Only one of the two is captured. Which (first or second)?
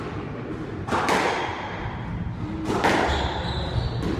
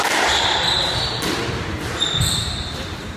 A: first